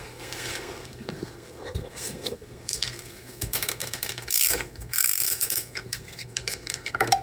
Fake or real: fake